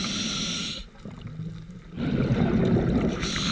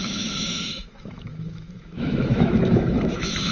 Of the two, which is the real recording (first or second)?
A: first